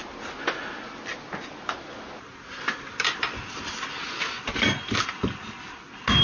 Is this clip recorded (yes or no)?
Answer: yes